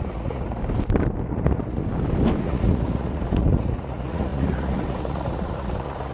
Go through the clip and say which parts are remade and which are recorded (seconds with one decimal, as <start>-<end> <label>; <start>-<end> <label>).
0.0-0.6 remade; 0.6-1.3 recorded; 1.3-1.8 remade; 1.8-2.4 recorded; 2.4-6.1 remade